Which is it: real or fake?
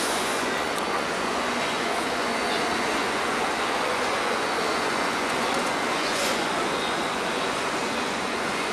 fake